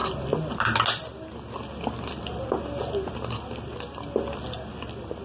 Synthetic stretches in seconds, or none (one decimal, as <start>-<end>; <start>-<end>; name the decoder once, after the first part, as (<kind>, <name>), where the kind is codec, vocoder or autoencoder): none